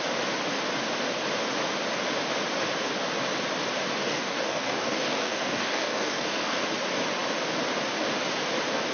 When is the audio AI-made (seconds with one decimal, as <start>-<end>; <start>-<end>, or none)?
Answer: 4.0-6.6